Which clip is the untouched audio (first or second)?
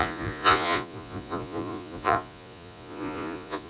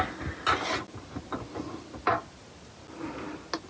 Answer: second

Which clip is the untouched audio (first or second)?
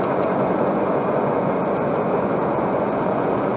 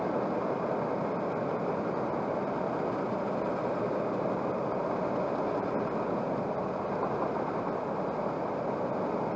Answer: second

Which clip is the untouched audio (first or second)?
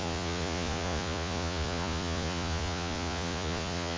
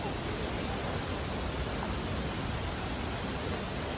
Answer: second